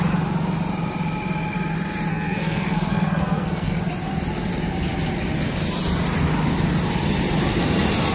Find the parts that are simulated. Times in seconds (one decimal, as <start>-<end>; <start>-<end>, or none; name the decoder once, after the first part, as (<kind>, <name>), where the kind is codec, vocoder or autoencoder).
2.1-3.7 (codec, SNAC)